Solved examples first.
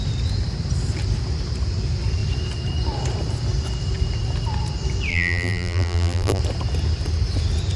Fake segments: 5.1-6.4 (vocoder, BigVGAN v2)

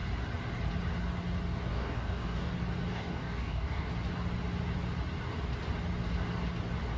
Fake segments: 1.7-2.5 (codec, DAC); 2.9-3.9